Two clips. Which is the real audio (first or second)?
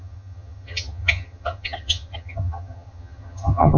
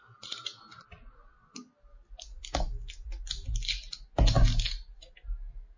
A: second